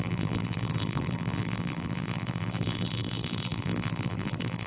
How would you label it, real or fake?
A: fake